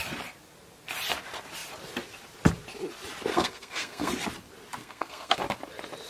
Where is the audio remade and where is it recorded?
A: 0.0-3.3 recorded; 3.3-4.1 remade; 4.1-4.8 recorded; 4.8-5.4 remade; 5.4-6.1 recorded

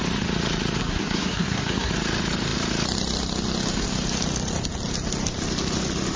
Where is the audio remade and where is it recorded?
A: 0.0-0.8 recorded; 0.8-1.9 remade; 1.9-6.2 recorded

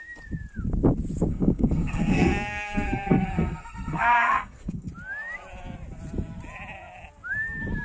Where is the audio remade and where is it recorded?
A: 0.0-1.3 recorded; 1.3-4.9 remade; 4.9-7.8 recorded